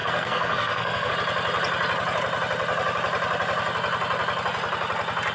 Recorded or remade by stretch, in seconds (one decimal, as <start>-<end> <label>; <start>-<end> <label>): 0.0-1.1 remade; 1.1-5.3 recorded